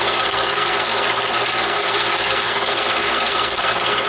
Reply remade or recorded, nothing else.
remade